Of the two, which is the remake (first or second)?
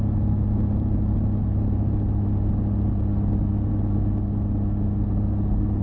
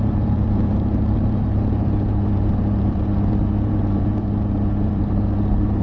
second